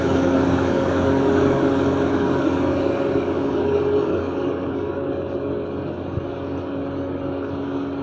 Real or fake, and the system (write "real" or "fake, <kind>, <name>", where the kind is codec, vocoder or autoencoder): fake, codec, DAC